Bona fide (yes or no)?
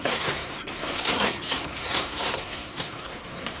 no